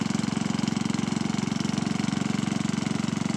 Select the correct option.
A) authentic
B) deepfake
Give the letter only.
A